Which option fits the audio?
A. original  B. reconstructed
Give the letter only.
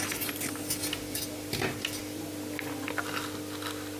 A